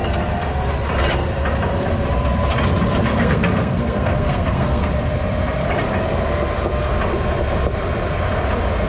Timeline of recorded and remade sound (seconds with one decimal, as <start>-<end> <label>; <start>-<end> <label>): 0.0-3.1 recorded; 3.1-4.9 remade; 4.9-8.9 recorded